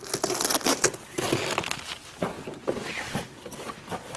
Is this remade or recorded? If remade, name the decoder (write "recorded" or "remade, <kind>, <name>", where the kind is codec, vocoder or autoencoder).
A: recorded